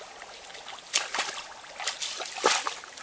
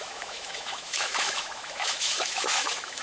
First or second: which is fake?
second